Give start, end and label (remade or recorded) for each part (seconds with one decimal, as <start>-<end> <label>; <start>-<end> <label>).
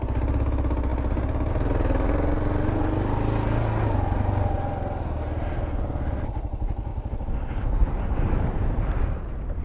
0.0-9.6 recorded